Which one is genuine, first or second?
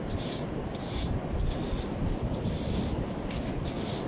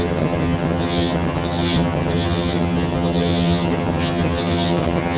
first